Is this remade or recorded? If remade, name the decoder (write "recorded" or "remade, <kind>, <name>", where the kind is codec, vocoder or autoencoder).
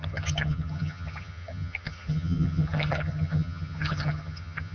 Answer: remade, vocoder, HiFi-GAN